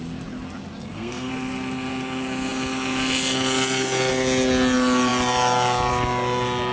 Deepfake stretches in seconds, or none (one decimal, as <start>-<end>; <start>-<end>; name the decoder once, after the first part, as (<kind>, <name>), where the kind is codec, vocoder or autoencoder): 0.8-1.3 (codec, SNAC)